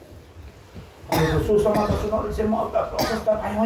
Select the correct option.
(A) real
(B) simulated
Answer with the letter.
A